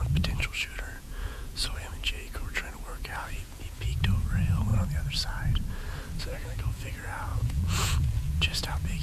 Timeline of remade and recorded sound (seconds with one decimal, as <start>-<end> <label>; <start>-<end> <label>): 0.0-4.7 remade; 4.7-6.2 recorded; 6.2-9.0 remade

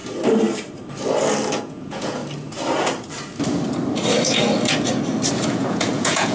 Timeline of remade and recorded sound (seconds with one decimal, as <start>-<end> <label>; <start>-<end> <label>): 0.0-1.6 recorded; 1.6-2.2 remade; 2.2-5.5 recorded; 5.5-6.3 remade

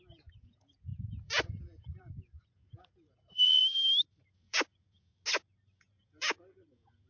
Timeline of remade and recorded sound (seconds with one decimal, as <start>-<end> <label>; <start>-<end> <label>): 0.0-3.6 remade; 3.6-4.2 recorded; 4.2-5.1 remade; 5.1-5.8 recorded; 5.8-7.1 remade

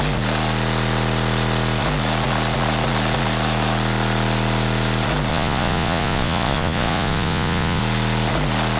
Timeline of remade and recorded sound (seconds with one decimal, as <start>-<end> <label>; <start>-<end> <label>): 0.0-5.3 recorded; 5.3-7.8 remade; 7.8-8.8 recorded

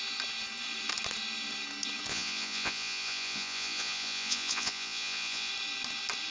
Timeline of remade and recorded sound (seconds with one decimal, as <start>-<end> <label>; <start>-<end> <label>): 0.0-2.1 recorded; 2.1-5.5 remade; 5.5-6.3 recorded

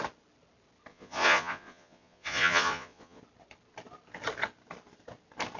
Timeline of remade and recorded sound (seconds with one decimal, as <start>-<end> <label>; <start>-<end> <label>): 0.0-0.9 recorded; 0.9-3.2 remade; 3.2-5.6 recorded